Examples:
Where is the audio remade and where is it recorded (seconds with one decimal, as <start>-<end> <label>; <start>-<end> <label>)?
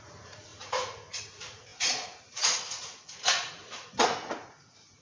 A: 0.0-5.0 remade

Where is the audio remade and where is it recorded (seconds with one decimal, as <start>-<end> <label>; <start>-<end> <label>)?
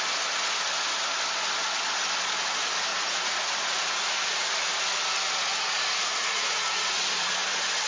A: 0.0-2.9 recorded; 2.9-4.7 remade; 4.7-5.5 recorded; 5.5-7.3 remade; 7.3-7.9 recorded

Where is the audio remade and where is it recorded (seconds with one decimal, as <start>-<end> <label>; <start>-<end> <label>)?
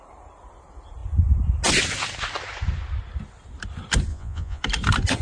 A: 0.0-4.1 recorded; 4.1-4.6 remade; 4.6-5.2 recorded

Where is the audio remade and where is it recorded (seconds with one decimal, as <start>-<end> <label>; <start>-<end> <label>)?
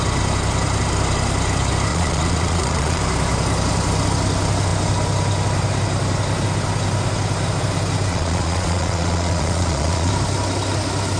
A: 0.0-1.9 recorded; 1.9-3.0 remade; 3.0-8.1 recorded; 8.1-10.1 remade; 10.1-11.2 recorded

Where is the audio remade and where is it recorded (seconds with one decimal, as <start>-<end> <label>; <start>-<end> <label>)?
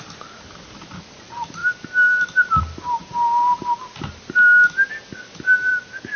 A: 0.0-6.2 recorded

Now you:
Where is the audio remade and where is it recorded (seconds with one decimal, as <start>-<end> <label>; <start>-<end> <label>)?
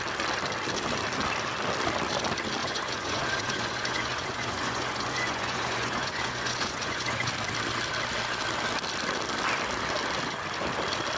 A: 0.0-2.6 recorded; 2.6-7.3 remade; 7.3-11.2 recorded